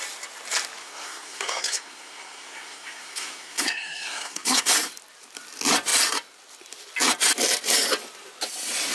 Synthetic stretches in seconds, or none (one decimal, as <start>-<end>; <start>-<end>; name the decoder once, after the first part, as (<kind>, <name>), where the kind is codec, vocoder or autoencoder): 0.8-4.7 (codec, SNAC)